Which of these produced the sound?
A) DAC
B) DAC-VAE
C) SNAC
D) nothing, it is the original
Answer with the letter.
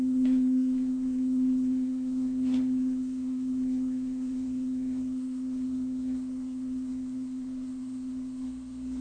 C